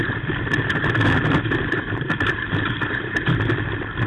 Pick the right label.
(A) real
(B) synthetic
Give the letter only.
A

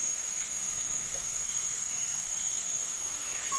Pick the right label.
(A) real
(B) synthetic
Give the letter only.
B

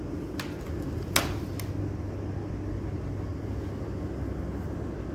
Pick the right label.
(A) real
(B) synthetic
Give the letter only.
A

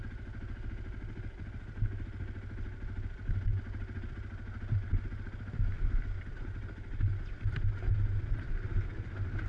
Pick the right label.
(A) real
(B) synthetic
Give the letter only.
A